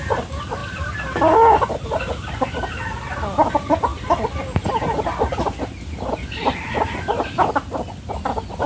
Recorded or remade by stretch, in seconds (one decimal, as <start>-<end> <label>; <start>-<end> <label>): 0.0-8.7 recorded